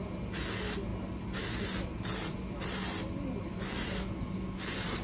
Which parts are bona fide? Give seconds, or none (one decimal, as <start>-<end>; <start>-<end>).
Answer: 0.0-5.0